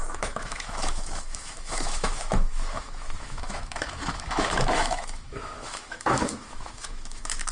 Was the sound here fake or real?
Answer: fake